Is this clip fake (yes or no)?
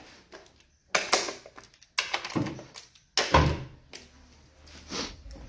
no